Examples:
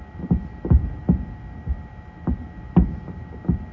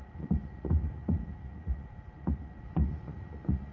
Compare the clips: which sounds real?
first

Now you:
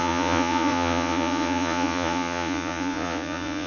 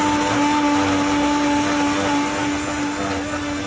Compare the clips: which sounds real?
second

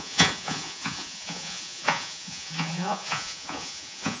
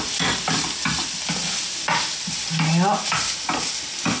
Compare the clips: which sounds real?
second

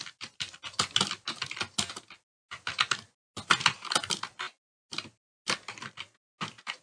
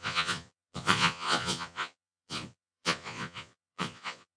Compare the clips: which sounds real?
first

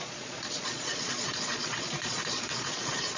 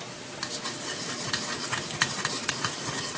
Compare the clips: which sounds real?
second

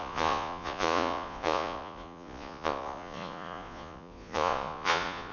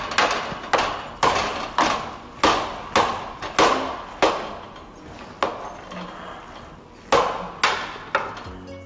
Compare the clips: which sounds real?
second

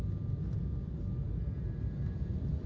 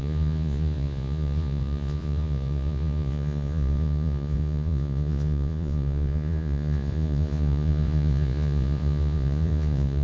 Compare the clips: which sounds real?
first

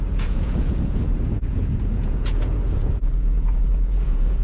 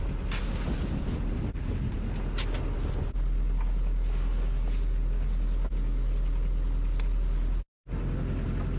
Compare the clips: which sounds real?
second